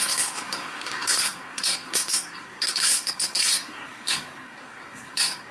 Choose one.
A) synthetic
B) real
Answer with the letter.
A